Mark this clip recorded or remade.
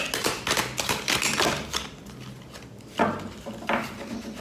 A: recorded